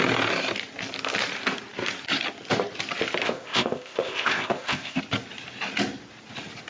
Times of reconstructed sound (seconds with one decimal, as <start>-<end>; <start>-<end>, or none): 3.2-5.0